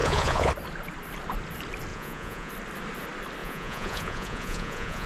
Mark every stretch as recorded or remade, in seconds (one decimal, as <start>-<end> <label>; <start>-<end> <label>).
0.0-0.5 remade; 0.5-1.9 recorded; 1.9-2.5 remade; 2.5-3.4 recorded; 3.4-5.1 remade